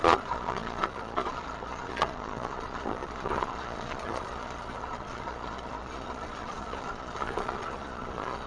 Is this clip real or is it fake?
fake